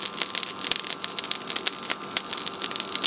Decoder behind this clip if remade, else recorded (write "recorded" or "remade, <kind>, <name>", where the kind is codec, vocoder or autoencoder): recorded